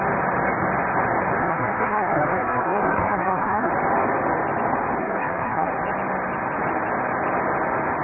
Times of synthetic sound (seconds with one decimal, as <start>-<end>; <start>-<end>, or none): 1.4-3.7; 5.0-5.7